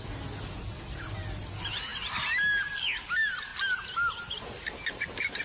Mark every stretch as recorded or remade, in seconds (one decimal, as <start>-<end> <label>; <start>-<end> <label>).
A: 0.0-5.4 recorded